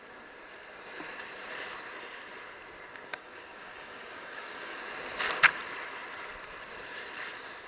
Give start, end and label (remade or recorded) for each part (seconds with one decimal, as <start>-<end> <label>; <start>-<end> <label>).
0.0-3.1 recorded; 3.1-4.8 remade; 4.8-7.7 recorded